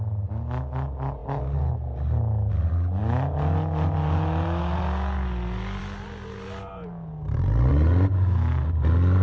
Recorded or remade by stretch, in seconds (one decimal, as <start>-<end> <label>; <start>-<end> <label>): 0.0-9.2 recorded